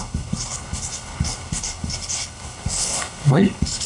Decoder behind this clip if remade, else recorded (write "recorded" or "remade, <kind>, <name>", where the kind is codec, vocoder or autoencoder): remade, codec, HILCodec